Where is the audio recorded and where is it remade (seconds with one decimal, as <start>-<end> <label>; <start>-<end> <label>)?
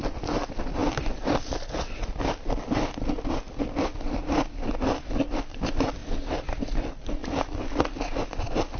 0.0-4.2 remade; 4.2-5.3 recorded; 5.3-6.0 remade; 6.0-6.6 recorded; 6.6-7.2 remade; 7.2-8.8 recorded